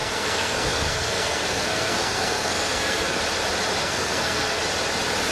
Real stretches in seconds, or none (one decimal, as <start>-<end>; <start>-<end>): 3.2-3.8; 4.6-5.3